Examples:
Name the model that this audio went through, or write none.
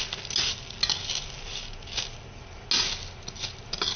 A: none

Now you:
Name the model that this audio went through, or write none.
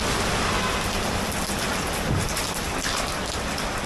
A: none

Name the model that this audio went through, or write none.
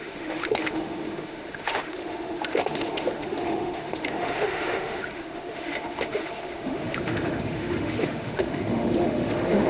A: autoencoder, DAC-VAE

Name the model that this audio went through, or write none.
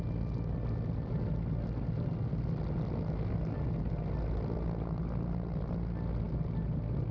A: none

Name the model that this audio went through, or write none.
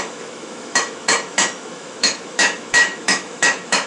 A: autoencoder, DAC-VAE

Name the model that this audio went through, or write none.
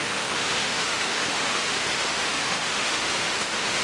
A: autoencoder, DAC-VAE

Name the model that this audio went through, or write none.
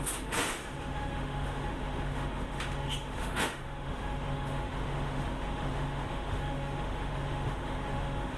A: autoencoder, DAC-VAE